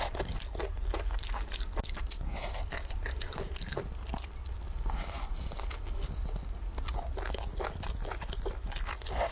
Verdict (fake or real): real